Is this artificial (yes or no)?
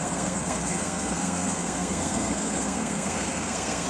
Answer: yes